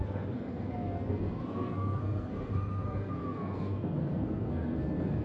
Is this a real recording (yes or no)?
no